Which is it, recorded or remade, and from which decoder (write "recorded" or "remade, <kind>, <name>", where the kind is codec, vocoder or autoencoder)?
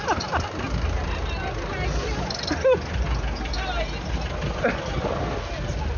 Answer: recorded